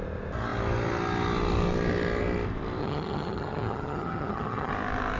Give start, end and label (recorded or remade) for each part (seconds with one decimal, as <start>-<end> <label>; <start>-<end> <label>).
0.0-2.8 recorded; 2.8-4.7 remade; 4.7-5.2 recorded

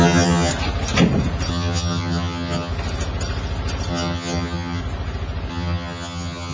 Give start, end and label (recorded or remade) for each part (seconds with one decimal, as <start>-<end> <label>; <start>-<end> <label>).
0.0-0.5 remade; 0.5-1.5 recorded; 1.5-2.7 remade; 2.7-3.9 recorded; 3.9-4.8 remade; 4.8-5.5 recorded; 5.5-6.5 remade

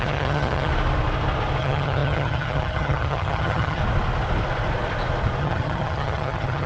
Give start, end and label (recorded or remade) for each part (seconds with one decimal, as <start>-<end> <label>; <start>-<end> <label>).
0.0-0.7 remade; 0.7-1.6 recorded; 1.6-3.8 remade; 3.8-5.4 recorded; 5.4-6.7 remade

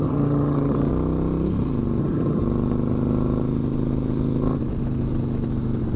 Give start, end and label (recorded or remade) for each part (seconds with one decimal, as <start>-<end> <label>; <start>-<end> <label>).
0.0-0.9 remade; 0.9-2.0 recorded; 2.0-2.4 remade; 2.4-6.0 recorded